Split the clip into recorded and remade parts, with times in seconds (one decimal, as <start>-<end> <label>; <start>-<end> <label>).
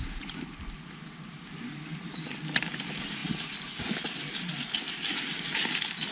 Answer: 0.0-6.1 recorded